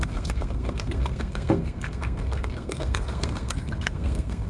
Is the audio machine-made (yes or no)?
yes